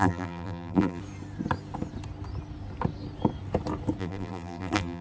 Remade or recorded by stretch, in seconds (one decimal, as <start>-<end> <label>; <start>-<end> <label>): 0.0-1.0 remade; 1.0-4.0 recorded; 4.0-5.0 remade